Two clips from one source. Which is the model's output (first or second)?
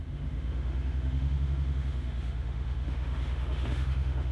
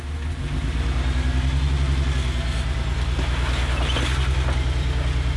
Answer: first